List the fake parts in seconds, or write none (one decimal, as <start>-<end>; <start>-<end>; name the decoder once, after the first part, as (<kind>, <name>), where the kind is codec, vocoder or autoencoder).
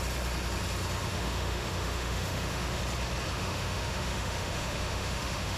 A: 1.0-2.8 (autoencoder, DAC-VAE); 3.3-5.6